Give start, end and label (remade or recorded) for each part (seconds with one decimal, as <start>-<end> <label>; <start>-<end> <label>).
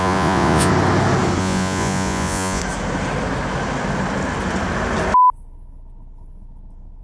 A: 0.0-0.7 remade; 0.7-1.4 recorded; 1.4-2.6 remade; 2.6-7.0 recorded